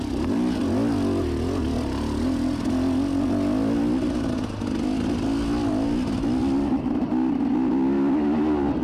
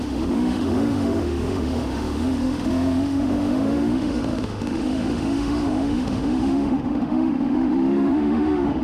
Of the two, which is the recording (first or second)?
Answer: first